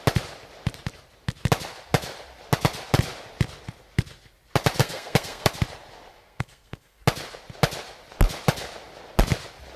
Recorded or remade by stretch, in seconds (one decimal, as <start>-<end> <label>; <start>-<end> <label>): 0.0-4.8 recorded; 4.8-5.5 remade; 5.5-6.1 recorded; 6.1-7.0 remade; 7.0-9.8 recorded